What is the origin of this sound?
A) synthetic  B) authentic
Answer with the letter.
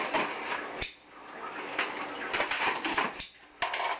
A